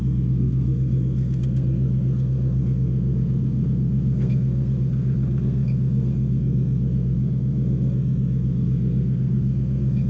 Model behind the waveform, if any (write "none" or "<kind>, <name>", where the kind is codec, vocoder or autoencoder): codec, SNAC